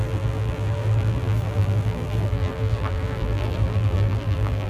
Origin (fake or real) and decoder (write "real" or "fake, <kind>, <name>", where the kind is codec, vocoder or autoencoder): fake, vocoder, BigVGAN v2